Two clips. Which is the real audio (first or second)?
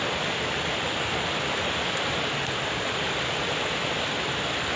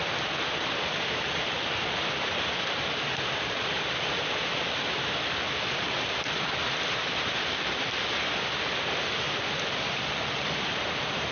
first